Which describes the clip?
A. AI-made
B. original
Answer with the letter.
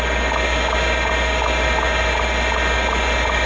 B